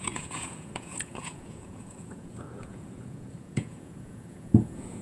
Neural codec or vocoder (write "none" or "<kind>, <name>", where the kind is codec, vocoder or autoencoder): vocoder, Vocos